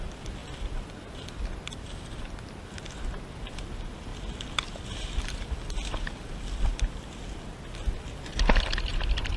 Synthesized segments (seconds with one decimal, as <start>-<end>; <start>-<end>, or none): none